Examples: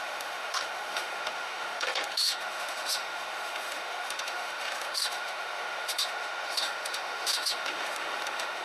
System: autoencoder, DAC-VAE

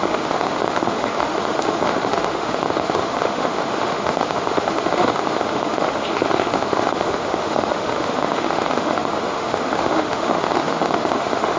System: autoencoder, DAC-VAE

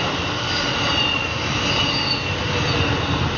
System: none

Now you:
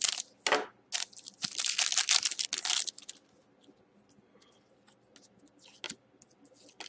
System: none